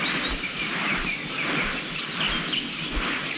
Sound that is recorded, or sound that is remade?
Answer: recorded